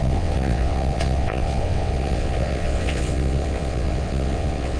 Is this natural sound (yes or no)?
no